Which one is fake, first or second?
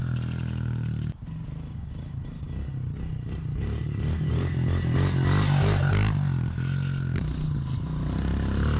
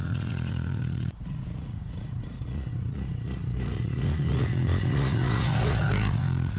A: second